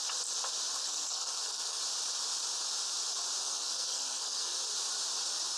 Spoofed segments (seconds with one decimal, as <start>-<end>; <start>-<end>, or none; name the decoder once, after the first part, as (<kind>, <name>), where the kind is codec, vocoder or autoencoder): 0.8-1.8 (codec, SNAC); 3.4-4.6